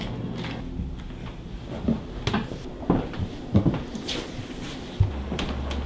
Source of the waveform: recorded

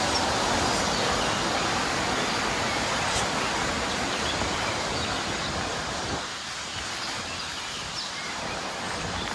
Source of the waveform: recorded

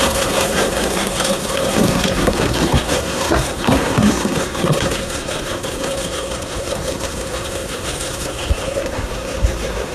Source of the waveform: remade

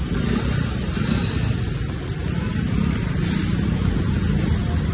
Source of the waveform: recorded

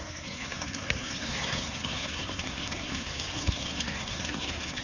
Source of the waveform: remade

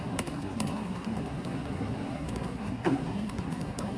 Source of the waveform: remade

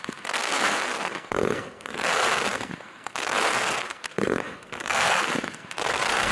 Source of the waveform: remade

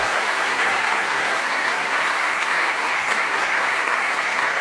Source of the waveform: remade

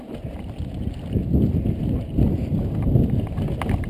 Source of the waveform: recorded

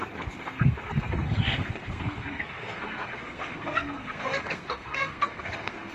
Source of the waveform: remade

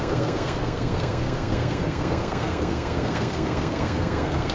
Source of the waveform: remade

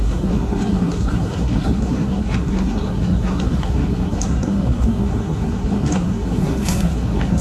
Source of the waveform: remade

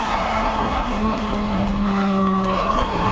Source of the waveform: remade